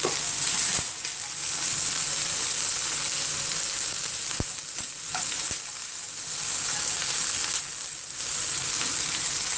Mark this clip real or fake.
real